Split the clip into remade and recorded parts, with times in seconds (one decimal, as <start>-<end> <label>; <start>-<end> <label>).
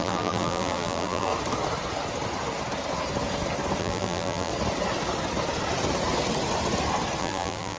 0.0-1.3 remade; 1.3-3.8 recorded; 3.8-4.5 remade; 4.5-7.2 recorded; 7.2-7.8 remade